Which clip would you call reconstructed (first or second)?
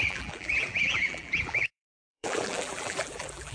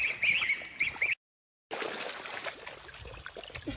first